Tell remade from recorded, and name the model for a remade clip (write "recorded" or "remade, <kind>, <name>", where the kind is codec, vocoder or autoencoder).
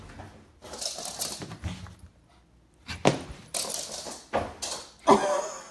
recorded